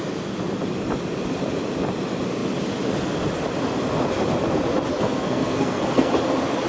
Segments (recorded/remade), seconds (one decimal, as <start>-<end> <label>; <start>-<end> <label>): 0.0-4.9 recorded; 4.9-6.1 remade; 6.1-6.7 recorded